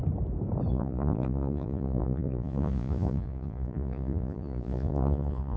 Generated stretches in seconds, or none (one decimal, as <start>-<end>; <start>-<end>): 0.7-5.6